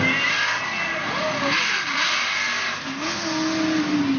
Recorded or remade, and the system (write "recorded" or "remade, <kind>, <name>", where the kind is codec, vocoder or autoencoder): recorded